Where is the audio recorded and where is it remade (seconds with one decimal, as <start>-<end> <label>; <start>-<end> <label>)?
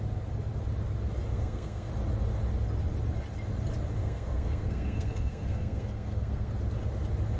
0.0-1.3 recorded; 1.3-1.9 remade; 1.9-4.0 recorded; 4.0-6.5 remade; 6.5-7.4 recorded